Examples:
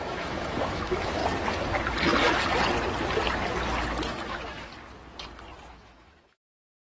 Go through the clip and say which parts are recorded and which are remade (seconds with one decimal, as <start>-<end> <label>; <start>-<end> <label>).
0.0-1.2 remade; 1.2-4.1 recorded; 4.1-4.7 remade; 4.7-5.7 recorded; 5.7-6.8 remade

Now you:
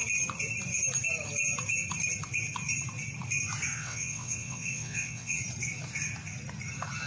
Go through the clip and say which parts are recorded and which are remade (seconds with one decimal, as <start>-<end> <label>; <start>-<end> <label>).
0.0-3.7 recorded; 3.7-5.4 remade; 5.4-7.1 recorded

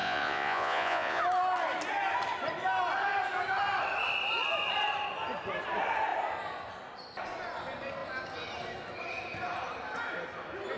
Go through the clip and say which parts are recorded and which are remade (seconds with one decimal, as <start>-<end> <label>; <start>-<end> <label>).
0.0-1.2 remade; 1.2-10.8 recorded